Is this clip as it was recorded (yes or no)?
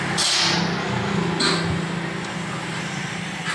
yes